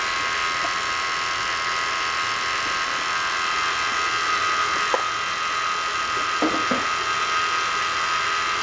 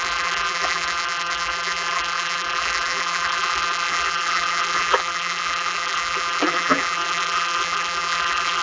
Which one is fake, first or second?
second